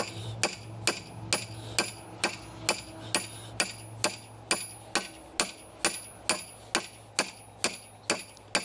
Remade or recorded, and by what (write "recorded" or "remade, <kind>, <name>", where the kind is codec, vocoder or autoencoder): recorded